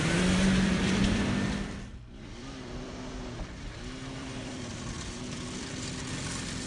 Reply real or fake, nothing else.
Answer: fake